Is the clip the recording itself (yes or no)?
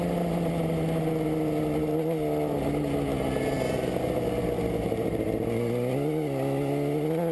yes